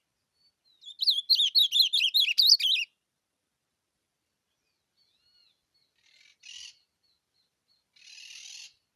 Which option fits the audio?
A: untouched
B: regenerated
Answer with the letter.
A